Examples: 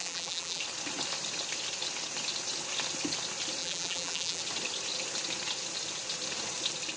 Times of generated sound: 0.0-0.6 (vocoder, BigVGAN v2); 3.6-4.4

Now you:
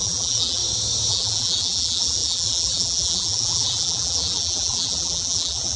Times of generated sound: 0.0-0.6 (vocoder, BigVGAN v2); 1.1-5.8